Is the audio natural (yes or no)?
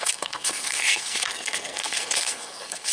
no